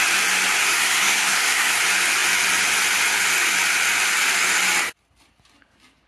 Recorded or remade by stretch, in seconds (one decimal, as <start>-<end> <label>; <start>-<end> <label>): 0.0-0.6 recorded; 0.6-1.8 remade; 1.8-6.1 recorded